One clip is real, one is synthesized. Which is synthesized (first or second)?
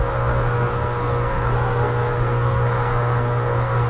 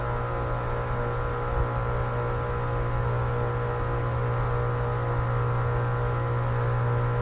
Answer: first